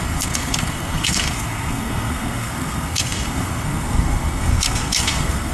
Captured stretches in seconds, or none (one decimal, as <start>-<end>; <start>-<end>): none